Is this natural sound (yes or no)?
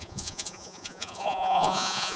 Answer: no